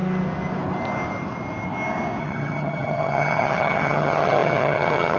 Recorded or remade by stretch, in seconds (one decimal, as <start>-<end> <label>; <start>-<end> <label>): 0.0-2.2 recorded; 2.2-5.2 remade